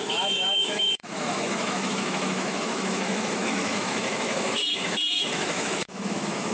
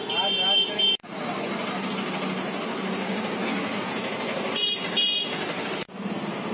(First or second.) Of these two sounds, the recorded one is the second